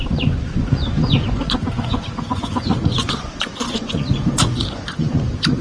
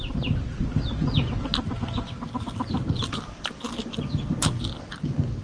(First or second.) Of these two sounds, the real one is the second